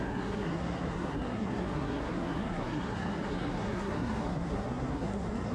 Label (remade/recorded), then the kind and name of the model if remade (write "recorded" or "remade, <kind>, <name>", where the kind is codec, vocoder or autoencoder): remade, codec, SNAC